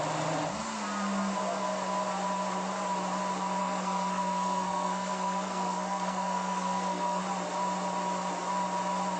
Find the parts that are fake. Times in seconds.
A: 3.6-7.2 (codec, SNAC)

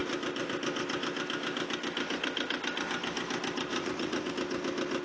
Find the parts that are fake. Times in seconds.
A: 3.7-4.3 (vocoder, Vocos)

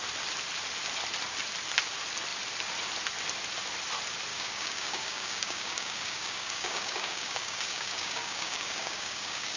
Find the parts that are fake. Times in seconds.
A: 4.3-9.6 (codec, DAC)

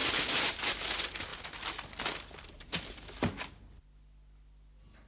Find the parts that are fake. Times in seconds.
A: none

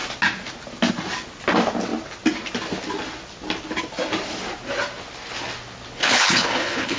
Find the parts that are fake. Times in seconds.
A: 5.9-7.0 (codec, HILCodec)

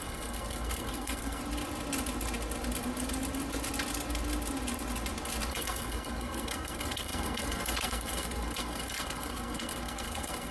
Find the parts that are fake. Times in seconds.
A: 0.0-1.4 (codec, SNAC); 5.5-10.5